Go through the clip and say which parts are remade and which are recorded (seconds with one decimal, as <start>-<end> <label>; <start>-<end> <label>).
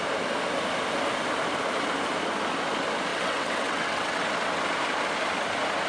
0.0-3.1 recorded; 3.1-4.2 remade; 4.2-5.9 recorded